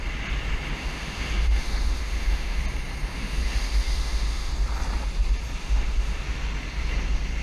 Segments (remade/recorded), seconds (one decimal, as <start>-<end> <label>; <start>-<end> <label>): 0.0-0.7 recorded; 0.7-2.6 remade; 2.6-3.1 recorded; 3.1-4.5 remade; 4.5-5.6 recorded; 5.6-6.2 remade; 6.2-7.4 recorded